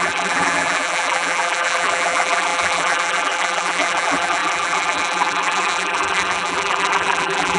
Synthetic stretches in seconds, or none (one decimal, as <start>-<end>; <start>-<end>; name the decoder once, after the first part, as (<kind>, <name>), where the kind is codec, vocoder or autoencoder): 0.0-7.6 (vocoder, BigVGAN v2)